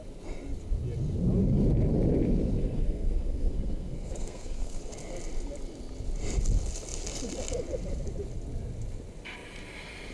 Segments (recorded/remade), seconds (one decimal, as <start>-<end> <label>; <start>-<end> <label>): 0.0-2.6 recorded; 2.6-4.8 remade; 4.8-10.1 recorded